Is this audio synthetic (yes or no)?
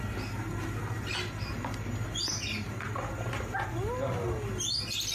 no